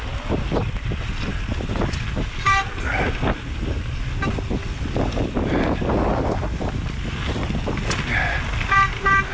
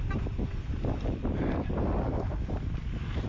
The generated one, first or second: second